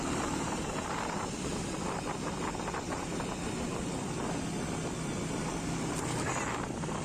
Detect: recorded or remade recorded